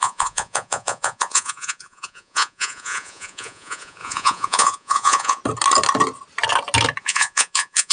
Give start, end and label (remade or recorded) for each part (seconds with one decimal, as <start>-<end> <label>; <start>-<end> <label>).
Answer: 0.0-5.4 remade; 5.4-7.0 recorded; 7.0-7.9 remade